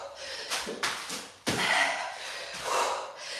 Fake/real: real